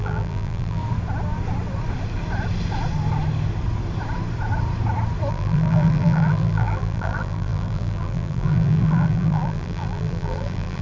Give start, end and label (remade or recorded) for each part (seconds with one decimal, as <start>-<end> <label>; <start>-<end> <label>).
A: 0.0-0.8 remade; 0.8-5.3 recorded; 5.3-10.8 remade